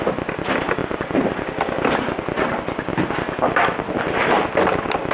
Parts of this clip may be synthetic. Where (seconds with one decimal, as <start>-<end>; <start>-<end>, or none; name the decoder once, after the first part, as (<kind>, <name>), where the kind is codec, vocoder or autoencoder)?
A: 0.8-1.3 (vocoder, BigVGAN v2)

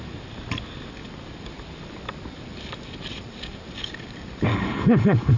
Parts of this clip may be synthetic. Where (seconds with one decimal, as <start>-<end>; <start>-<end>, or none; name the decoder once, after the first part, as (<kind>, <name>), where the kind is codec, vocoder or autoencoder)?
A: 4.5-5.4 (codec, HILCodec)

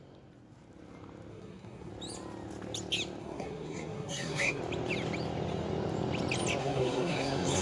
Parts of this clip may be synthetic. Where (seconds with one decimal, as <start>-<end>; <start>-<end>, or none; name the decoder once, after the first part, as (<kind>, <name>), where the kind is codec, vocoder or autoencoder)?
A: 1.3-1.9 (codec, SNAC); 3.2-4.6; 6.6-7.6

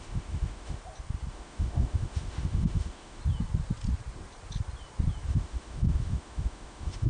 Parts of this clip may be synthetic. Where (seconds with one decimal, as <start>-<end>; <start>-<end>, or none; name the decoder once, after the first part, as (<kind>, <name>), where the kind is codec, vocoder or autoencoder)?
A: 0.0-0.8 (autoencoder, DAC-VAE); 1.3-3.2; 5.3-7.1